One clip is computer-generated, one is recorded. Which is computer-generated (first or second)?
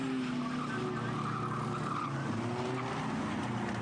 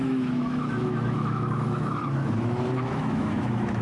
second